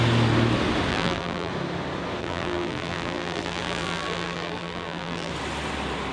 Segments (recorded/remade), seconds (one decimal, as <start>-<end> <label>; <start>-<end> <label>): 0.0-0.9 recorded; 0.9-1.5 remade; 1.5-2.2 recorded; 2.2-5.3 remade; 5.3-6.1 recorded